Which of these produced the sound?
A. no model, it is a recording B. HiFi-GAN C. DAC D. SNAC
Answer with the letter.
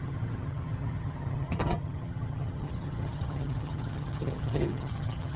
B